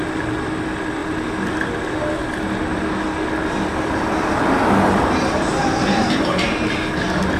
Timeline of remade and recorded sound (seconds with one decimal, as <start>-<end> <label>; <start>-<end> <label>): 0.0-7.4 recorded